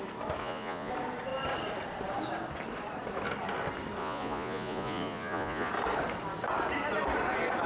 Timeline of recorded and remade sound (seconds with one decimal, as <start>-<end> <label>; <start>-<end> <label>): 0.0-0.4 recorded; 0.4-0.9 remade; 0.9-4.0 recorded; 4.0-5.7 remade; 5.7-7.7 recorded